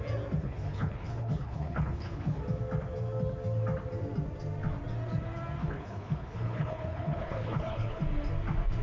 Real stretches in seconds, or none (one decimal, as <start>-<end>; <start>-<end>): 0.0-0.4; 2.4-5.6; 8.0-8.8